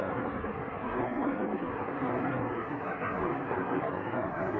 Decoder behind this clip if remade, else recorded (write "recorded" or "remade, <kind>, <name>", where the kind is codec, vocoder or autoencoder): remade, codec, SNAC